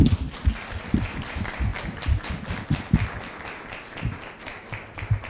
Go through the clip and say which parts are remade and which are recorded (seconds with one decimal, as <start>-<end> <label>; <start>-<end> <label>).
0.0-5.3 recorded